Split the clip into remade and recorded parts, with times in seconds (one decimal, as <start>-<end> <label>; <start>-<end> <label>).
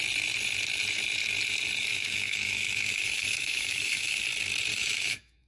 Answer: 0.0-1.9 recorded; 1.9-4.2 remade; 4.2-4.7 recorded; 4.7-5.5 remade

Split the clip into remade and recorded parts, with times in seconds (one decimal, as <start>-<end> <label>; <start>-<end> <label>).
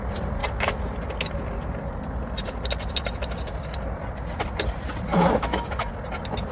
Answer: 0.0-5.1 recorded; 5.1-5.9 remade; 5.9-6.5 recorded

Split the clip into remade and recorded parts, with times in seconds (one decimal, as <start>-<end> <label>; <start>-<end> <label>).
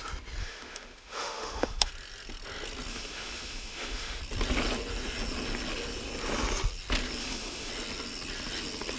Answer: 0.0-0.4 recorded; 0.4-1.9 remade; 1.9-2.9 recorded; 2.9-4.2 remade; 4.2-7.2 recorded; 7.2-7.7 remade; 7.7-9.0 recorded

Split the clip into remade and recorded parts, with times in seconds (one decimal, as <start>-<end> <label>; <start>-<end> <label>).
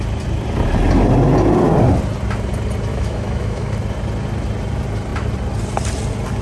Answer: 0.0-2.9 recorded; 2.9-3.7 remade; 3.7-6.4 recorded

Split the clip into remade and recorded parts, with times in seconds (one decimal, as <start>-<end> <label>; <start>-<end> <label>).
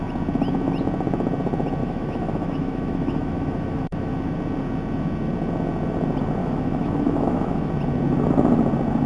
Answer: 0.0-1.8 recorded; 1.8-4.1 remade; 4.1-6.4 recorded; 6.4-7.7 remade; 7.7-9.1 recorded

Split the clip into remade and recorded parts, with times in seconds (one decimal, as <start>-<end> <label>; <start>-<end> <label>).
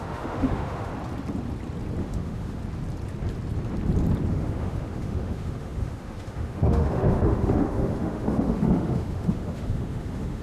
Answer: 0.0-0.9 remade; 0.9-2.0 recorded; 2.0-2.6 remade; 2.6-4.3 recorded; 4.3-10.4 remade